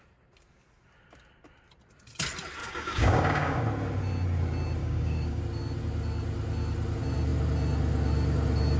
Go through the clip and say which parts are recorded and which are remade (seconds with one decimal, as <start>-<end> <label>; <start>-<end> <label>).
0.0-2.6 recorded; 2.6-3.6 remade; 3.6-4.8 recorded; 4.8-5.4 remade; 5.4-8.8 recorded